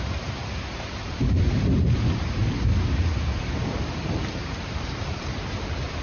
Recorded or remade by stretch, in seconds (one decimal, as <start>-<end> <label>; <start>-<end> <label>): 0.0-2.4 remade; 2.4-3.4 recorded; 3.4-6.0 remade